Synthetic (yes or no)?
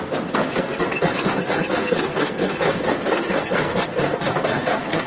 yes